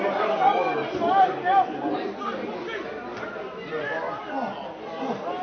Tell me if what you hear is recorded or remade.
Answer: recorded